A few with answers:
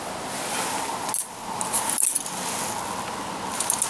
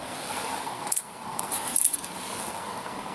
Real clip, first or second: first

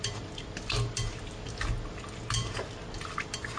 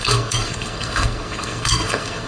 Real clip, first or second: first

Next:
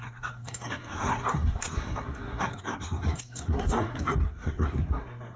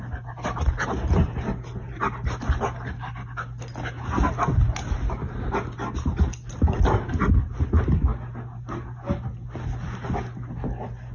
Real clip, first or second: second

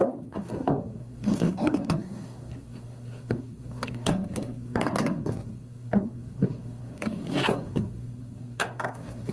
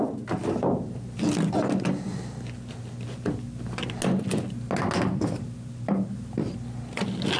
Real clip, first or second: second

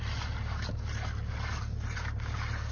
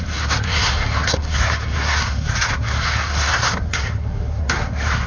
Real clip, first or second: first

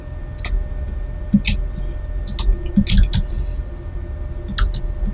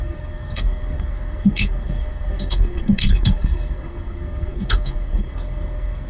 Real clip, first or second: first